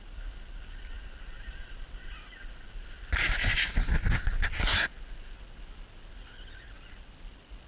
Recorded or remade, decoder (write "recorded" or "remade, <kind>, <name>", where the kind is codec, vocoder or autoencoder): recorded